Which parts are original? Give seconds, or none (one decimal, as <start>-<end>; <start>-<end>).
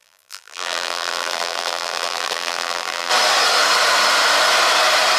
3.1-5.2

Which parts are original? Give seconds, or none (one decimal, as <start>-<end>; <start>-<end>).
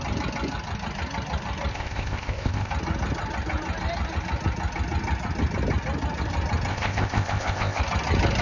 0.0-1.7; 2.7-6.7; 7.8-8.4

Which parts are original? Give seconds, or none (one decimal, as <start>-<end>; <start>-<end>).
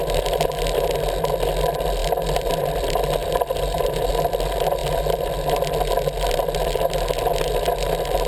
0.0-2.0; 2.5-3.2; 4.1-4.8; 5.5-8.3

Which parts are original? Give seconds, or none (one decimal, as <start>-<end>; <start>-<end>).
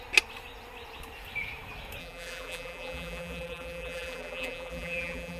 0.0-2.0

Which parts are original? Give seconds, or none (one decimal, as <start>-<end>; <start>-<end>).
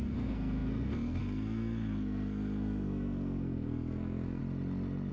4.4-5.1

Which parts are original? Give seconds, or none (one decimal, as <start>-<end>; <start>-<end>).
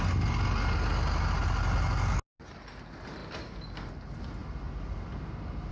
0.0-5.7